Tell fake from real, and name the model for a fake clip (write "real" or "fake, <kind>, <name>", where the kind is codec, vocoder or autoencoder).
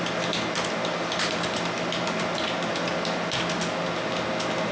real